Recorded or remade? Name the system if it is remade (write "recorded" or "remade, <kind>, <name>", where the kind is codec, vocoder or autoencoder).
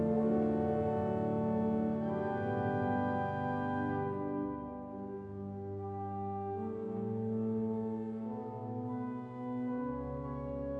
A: recorded